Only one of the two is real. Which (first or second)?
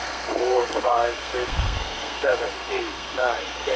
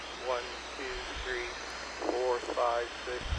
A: second